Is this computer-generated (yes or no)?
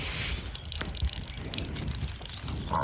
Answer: no